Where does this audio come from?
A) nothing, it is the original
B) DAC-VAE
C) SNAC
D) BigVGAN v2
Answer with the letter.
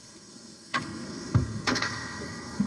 C